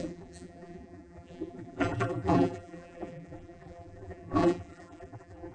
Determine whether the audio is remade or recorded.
remade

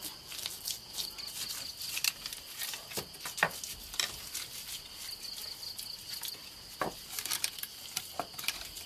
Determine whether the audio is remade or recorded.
recorded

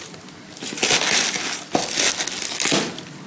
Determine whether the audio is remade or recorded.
recorded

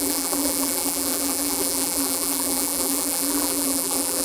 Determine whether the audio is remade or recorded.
remade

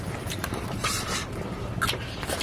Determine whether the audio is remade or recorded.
recorded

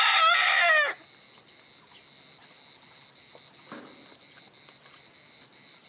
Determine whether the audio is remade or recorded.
recorded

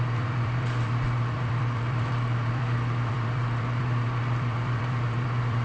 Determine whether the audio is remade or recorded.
remade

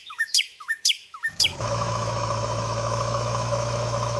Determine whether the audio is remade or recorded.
remade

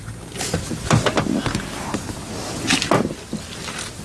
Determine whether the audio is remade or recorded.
recorded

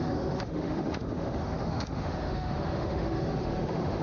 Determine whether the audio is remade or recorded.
remade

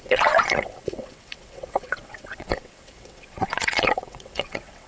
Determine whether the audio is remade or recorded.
remade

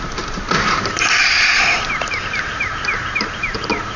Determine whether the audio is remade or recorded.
remade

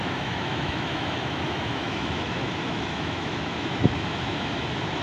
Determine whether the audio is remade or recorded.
remade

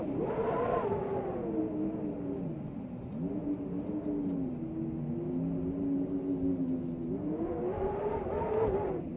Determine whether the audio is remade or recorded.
recorded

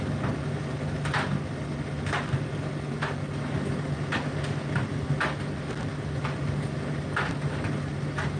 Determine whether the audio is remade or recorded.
recorded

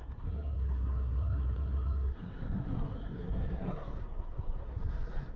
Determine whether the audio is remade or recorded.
remade